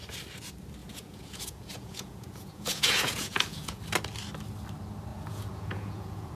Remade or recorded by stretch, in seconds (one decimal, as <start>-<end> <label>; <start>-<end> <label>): 0.0-0.8 recorded; 0.8-3.8 remade; 3.8-5.1 recorded; 5.1-6.3 remade